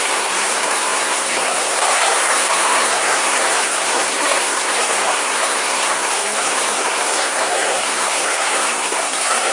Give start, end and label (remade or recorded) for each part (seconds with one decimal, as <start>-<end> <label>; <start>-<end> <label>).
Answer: 0.0-9.5 remade